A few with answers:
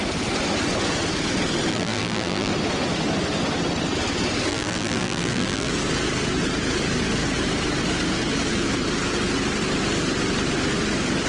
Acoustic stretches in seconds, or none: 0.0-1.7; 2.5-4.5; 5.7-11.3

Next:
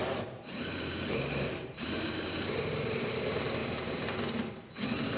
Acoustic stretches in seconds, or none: 3.1-5.2